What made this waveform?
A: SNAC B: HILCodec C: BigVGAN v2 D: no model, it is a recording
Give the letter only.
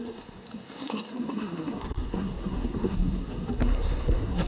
A